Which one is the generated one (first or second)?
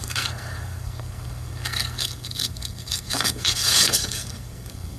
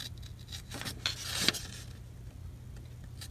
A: first